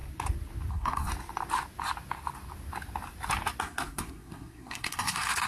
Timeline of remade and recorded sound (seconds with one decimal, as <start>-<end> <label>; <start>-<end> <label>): 0.0-0.7 recorded; 0.7-1.1 remade; 1.1-3.6 recorded; 3.6-5.5 remade